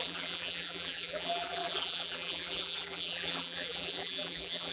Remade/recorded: remade